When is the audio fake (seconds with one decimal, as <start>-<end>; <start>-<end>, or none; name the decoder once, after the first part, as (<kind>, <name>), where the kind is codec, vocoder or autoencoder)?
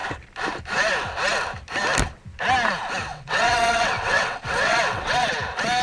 3.1-5.3 (vocoder, WaveNeXt)